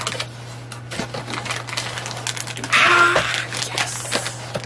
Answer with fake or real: real